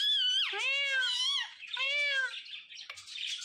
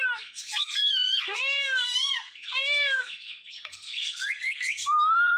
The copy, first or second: second